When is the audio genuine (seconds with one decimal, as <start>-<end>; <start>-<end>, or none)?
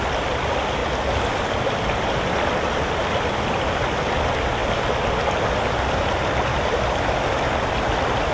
0.0-8.3